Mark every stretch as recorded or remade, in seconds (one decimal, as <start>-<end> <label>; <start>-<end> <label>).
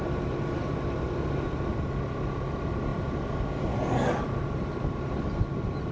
0.0-5.9 recorded